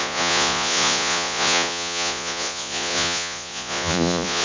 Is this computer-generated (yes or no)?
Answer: yes